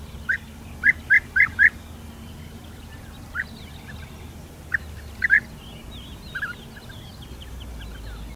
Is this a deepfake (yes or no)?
no